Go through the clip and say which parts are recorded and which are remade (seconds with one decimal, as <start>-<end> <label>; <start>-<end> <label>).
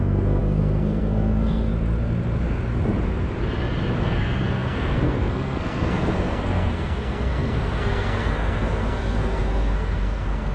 0.0-1.7 remade; 1.7-4.0 recorded; 4.0-10.5 remade